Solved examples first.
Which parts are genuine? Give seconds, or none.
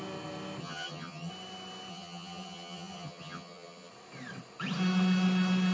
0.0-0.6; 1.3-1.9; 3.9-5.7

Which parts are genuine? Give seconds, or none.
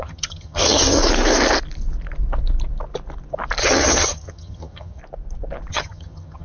1.0-3.6; 5.0-5.7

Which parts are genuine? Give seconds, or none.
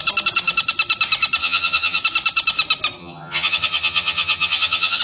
0.0-1.4; 2.0-3.0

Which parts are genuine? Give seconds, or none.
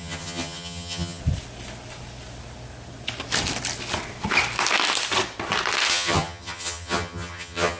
1.2-5.9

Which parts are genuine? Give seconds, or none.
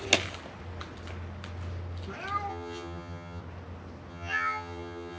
0.0-2.5; 3.4-4.1